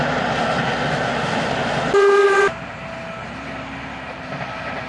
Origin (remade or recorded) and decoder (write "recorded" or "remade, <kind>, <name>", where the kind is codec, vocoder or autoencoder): recorded